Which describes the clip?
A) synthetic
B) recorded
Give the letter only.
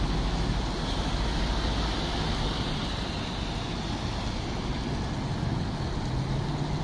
B